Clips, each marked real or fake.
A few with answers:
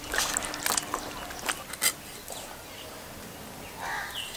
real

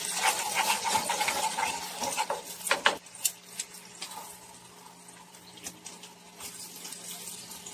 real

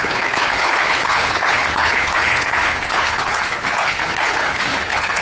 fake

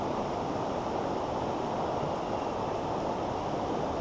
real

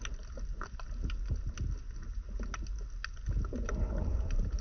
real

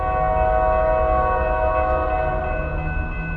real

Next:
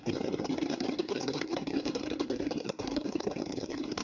fake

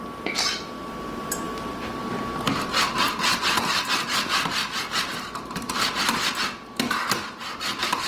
real